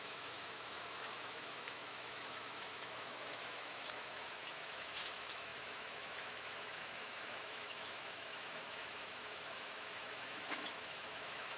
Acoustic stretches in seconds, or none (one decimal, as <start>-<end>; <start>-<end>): none